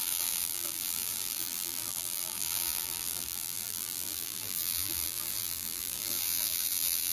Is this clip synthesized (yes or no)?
yes